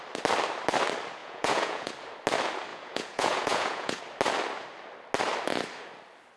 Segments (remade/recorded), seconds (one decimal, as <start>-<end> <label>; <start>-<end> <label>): 0.0-1.2 recorded; 1.2-1.9 remade; 1.9-2.7 recorded; 2.7-4.0 remade; 4.0-6.4 recorded